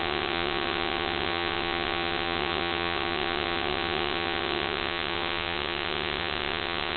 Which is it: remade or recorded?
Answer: remade